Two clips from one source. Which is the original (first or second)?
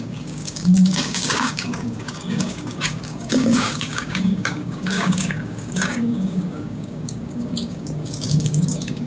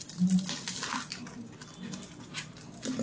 second